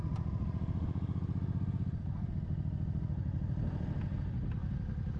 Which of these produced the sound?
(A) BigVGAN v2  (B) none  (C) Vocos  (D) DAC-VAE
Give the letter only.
B